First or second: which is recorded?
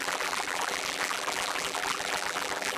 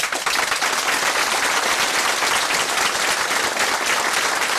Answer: second